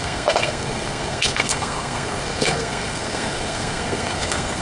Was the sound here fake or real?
fake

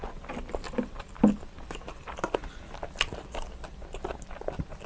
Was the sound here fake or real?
real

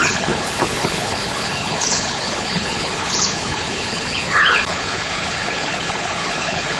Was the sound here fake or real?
fake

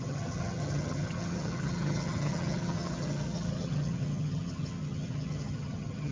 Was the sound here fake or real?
fake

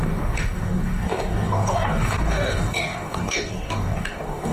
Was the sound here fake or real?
fake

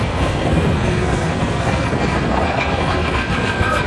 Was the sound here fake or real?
fake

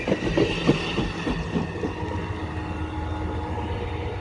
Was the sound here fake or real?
real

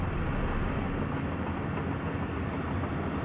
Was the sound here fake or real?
real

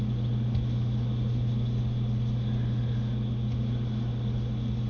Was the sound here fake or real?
real